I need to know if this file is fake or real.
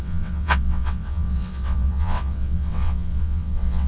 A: fake